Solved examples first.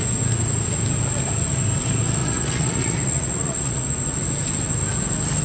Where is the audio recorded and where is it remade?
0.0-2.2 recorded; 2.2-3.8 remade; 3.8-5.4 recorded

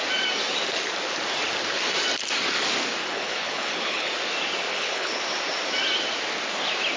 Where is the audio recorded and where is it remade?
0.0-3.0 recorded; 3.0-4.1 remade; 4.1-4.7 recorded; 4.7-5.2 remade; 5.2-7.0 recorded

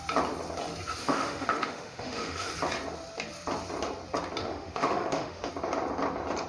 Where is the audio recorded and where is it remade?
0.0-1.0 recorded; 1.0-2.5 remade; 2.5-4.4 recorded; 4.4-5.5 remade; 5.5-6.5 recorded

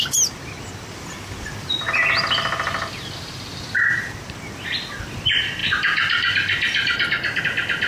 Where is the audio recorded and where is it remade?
0.0-7.9 recorded